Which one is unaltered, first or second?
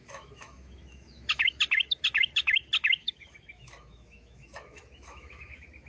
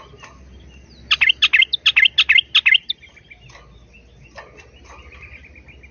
second